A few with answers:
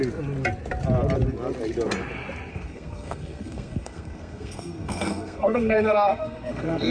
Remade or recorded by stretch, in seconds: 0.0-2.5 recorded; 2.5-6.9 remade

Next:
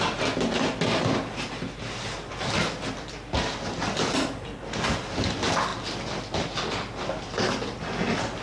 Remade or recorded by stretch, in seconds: 0.0-8.4 recorded

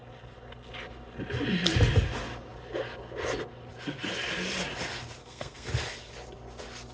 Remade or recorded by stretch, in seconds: 0.0-5.2 recorded; 5.2-5.7 remade; 5.7-6.9 recorded

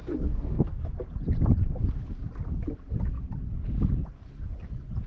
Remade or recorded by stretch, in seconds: 0.0-0.9 remade; 0.9-5.1 recorded

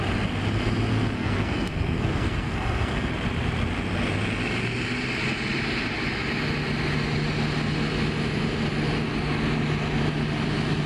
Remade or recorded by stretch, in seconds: 0.0-0.9 recorded; 0.9-3.1 remade; 3.1-10.9 recorded

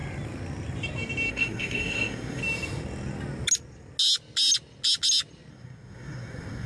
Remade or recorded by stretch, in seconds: 0.0-1.3 recorded; 1.3-2.4 remade; 2.4-5.5 recorded; 5.5-6.7 remade

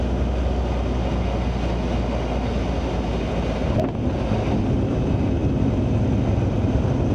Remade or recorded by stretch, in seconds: 0.0-7.1 recorded

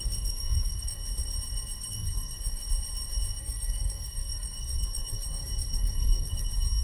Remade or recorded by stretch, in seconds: 0.0-1.0 remade; 1.0-1.9 recorded; 1.9-2.6 remade; 2.6-3.4 recorded; 3.4-6.8 remade